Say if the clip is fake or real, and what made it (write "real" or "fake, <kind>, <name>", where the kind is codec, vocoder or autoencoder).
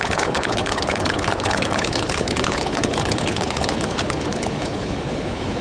fake, codec, HILCodec